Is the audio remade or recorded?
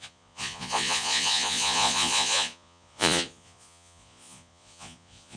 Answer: remade